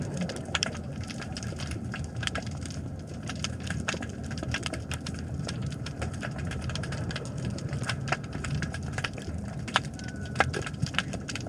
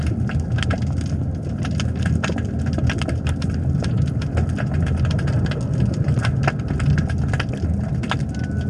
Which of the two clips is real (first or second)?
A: second